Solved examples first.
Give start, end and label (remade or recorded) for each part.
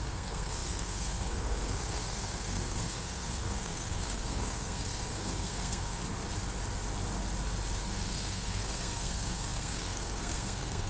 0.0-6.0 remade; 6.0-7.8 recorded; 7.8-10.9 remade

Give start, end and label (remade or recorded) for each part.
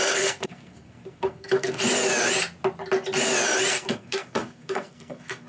0.0-1.8 remade; 1.8-3.7 recorded; 3.7-5.5 remade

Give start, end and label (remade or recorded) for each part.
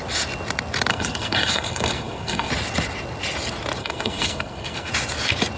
0.0-0.9 recorded; 0.9-2.5 remade; 2.5-3.8 recorded; 3.8-4.9 remade; 4.9-5.6 recorded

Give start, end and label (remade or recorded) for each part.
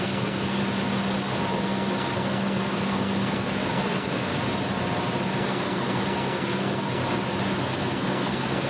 0.0-0.6 remade; 0.6-1.5 recorded; 1.5-4.3 remade; 4.3-5.3 recorded; 5.3-7.0 remade; 7.0-7.6 recorded; 7.6-8.7 remade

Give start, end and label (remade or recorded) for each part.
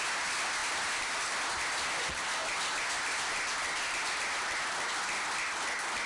0.0-6.1 recorded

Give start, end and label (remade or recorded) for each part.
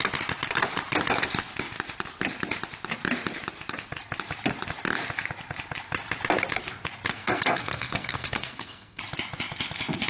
0.0-7.1 recorded; 7.1-9.0 remade; 9.0-10.1 recorded